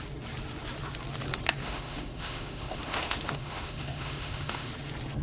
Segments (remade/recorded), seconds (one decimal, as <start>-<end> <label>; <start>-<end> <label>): 0.0-1.6 recorded; 1.6-4.7 remade; 4.7-5.2 recorded